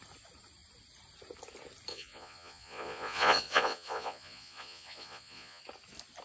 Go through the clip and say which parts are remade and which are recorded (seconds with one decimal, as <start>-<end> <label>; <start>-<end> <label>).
0.0-1.9 recorded; 1.9-5.6 remade; 5.6-6.2 recorded